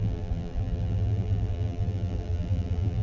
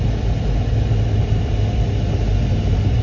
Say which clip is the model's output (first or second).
first